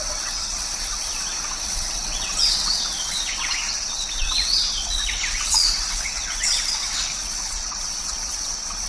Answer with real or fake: fake